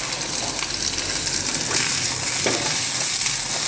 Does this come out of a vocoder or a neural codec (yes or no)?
no